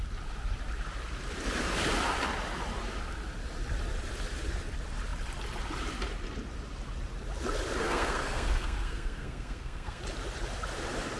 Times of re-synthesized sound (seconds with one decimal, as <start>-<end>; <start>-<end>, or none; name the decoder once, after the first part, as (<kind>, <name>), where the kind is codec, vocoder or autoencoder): 7.8-10.0 (codec, SNAC)